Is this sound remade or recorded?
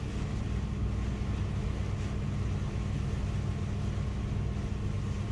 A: recorded